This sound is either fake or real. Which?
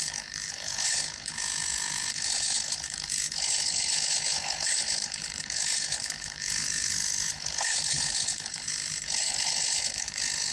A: fake